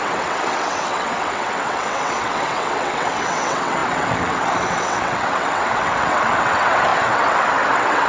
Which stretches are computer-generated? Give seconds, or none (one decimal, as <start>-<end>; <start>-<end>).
0.0-8.1